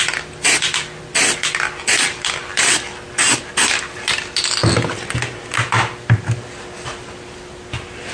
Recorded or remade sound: recorded